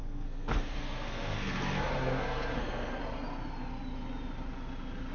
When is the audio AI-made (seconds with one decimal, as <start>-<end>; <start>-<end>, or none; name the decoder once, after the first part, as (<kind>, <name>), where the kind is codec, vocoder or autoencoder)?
0.0-3.0 (codec, SNAC)